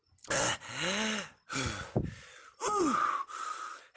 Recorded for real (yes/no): yes